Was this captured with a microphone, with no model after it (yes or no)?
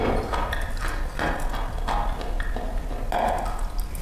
yes